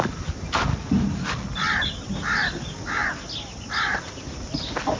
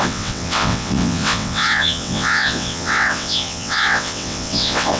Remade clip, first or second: second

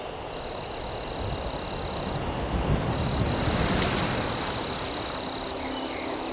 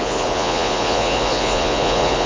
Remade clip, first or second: second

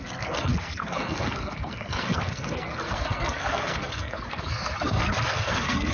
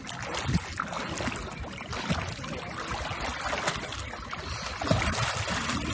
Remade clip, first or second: first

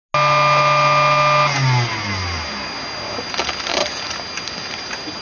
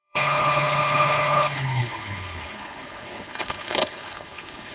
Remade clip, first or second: second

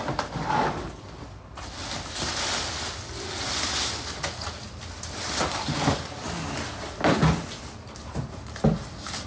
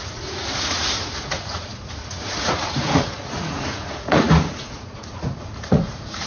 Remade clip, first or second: second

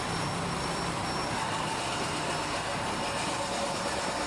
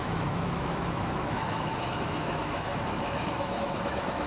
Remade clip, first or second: second